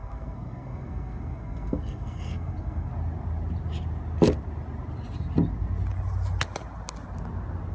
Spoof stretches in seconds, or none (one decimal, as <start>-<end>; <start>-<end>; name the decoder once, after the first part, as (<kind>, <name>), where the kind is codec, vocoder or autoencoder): 0.0-2.9 (codec, SNAC)